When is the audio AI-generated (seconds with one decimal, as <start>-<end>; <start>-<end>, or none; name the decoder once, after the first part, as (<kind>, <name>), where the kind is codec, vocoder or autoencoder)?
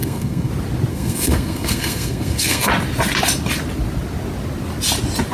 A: 0.0-0.5 (codec, SNAC); 0.9-2.7